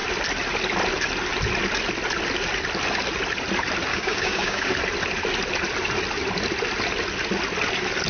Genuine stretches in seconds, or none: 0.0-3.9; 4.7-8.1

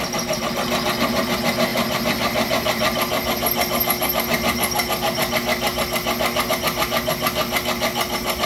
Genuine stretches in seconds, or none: 0.0-8.5

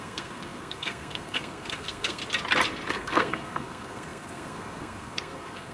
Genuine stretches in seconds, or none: 2.2-2.9

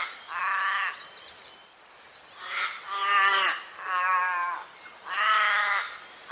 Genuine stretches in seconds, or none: 0.0-6.3

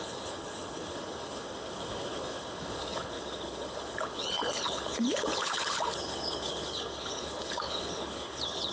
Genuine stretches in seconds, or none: none

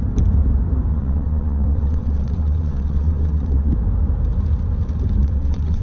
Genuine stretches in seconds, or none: 0.0-0.9; 3.7-5.2